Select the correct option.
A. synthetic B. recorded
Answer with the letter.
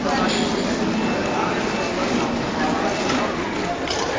B